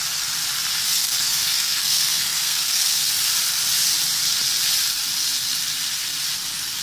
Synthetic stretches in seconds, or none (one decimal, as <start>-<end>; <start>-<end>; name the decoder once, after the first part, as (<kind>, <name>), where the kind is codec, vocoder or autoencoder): 1.0-3.1 (codec, SNAC)